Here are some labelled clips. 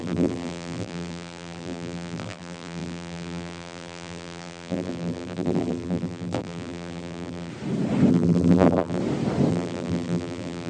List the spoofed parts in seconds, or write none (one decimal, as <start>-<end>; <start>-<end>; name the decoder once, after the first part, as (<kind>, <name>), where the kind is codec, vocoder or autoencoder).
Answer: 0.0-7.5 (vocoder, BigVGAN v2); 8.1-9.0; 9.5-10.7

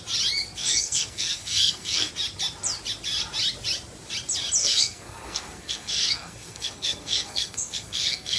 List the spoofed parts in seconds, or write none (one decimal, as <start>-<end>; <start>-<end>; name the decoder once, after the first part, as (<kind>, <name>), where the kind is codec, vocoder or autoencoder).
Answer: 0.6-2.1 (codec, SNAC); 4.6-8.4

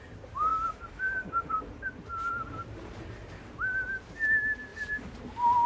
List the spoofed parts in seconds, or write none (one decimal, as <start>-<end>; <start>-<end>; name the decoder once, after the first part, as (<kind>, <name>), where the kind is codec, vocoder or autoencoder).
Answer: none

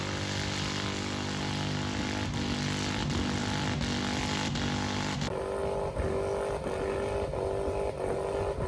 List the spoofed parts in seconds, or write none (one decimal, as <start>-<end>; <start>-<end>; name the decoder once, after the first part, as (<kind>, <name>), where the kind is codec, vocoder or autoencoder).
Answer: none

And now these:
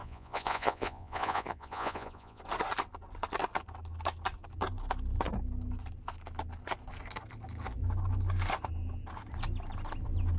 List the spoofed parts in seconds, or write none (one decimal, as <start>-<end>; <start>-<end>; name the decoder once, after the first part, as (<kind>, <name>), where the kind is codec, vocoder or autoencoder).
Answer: 0.0-2.4 (vocoder, Vocos)